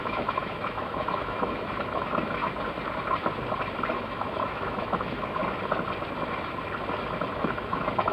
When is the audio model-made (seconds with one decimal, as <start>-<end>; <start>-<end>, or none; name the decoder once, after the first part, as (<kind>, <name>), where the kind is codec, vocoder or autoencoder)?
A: 0.0-2.4 (autoencoder, DAC-VAE); 3.9-5.4; 7.3-8.1